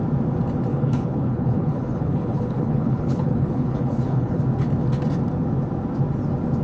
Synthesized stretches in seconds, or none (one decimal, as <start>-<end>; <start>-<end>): 0.7-4.4

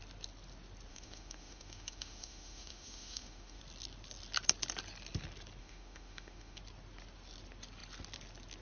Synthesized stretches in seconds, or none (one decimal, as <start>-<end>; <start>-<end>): 0.9-3.6; 5.6-6.6

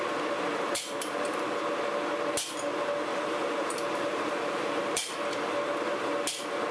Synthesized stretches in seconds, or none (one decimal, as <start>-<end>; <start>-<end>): 0.5-1.6; 3.1-5.1

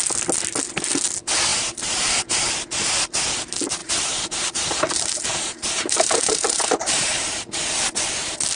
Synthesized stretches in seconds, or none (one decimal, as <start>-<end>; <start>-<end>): 1.5-2.5; 3.8-7.6

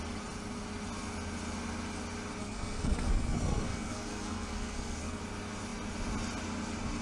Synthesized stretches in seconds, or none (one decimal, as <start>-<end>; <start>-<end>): 2.4-5.2

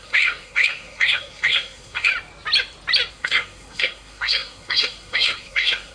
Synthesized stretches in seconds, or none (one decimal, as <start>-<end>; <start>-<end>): 0.0-2.1; 3.1-5.9